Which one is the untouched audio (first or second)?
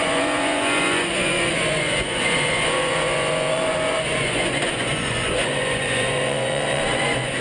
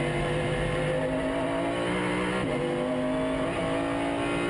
second